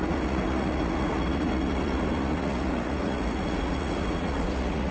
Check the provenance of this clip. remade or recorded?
remade